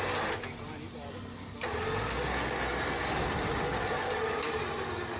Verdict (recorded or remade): recorded